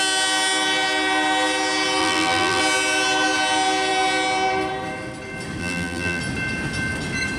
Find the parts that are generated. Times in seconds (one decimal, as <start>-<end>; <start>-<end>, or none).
2.0-2.6; 5.6-6.2